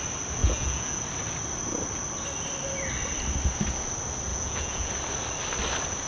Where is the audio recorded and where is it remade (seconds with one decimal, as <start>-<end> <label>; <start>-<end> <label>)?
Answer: 0.0-0.4 recorded; 0.4-1.0 remade; 1.0-4.3 recorded; 4.3-4.9 remade; 4.9-6.1 recorded